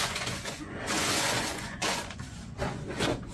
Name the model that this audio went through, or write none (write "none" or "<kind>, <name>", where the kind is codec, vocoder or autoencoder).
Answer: vocoder, Vocos